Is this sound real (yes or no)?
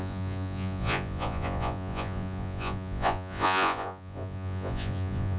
no